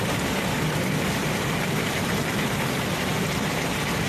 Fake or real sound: real